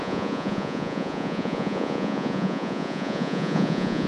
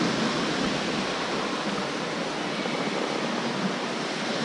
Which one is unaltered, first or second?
second